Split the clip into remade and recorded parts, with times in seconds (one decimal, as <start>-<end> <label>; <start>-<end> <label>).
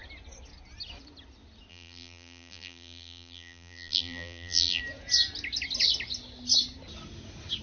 0.0-1.7 recorded; 1.7-4.8 remade; 4.8-7.6 recorded